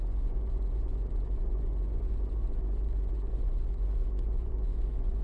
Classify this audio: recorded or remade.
remade